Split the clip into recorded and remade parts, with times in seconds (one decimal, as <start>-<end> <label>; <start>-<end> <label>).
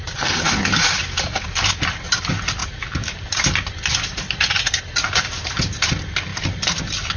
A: 0.0-2.6 recorded; 2.6-4.8 remade; 4.8-6.3 recorded; 6.3-6.8 remade; 6.8-7.2 recorded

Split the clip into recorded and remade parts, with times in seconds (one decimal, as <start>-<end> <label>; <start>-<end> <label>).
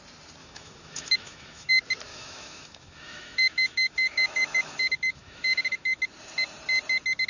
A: 0.0-0.4 recorded; 0.4-1.7 remade; 1.7-2.1 recorded; 2.1-6.0 remade; 6.0-7.3 recorded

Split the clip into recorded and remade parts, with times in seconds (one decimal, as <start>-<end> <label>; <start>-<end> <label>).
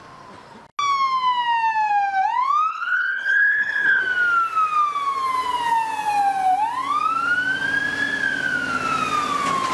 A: 0.0-2.7 recorded; 2.7-4.0 remade; 4.0-9.7 recorded